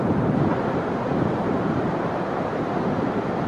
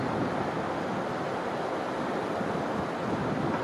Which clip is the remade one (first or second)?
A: first